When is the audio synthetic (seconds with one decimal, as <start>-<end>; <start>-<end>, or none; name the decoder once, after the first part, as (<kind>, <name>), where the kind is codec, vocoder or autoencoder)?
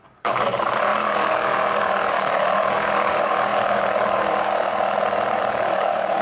0.0-4.5 (codec, DAC); 5.4-6.2